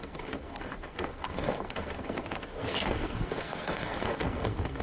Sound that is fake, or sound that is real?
fake